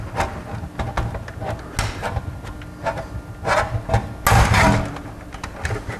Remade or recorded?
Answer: recorded